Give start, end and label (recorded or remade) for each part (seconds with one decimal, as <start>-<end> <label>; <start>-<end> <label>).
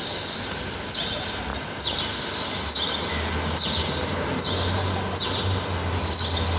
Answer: 0.0-6.6 recorded